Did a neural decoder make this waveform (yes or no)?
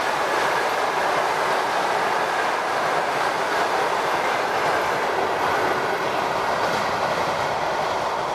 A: no